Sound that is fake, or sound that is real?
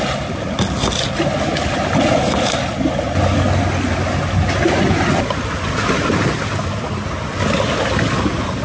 real